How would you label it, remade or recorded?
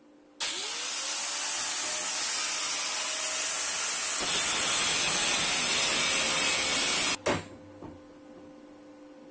recorded